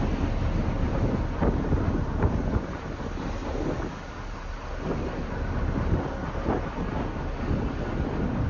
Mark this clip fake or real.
real